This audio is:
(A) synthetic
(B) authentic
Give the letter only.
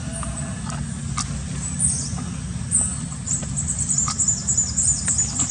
B